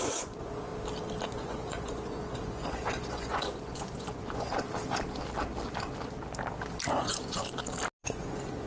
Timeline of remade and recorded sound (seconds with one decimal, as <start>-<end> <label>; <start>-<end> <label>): 0.0-0.7 remade; 0.7-1.3 recorded; 1.3-4.5 remade; 4.5-6.9 recorded; 6.9-7.4 remade; 7.4-8.0 recorded; 8.0-8.7 remade